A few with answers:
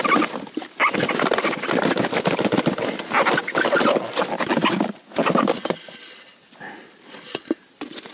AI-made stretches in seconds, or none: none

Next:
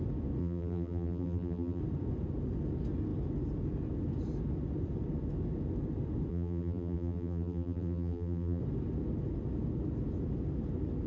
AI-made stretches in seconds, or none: 0.4-1.8 (vocoder, BigVGAN v2); 6.3-8.6

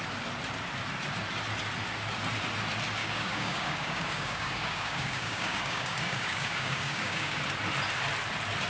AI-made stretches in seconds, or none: 3.0-7.4 (codec, DAC)

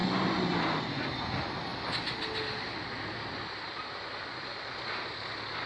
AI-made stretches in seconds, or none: none

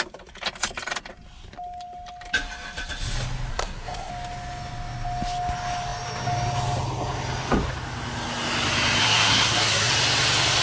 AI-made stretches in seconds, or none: 3.5-4.1 (codec, SNAC); 9.0-9.9